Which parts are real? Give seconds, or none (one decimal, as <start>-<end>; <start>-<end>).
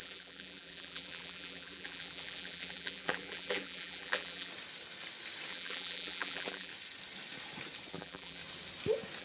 4.5-5.5; 6.7-7.9; 8.4-9.2